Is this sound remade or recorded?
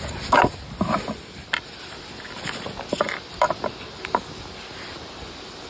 recorded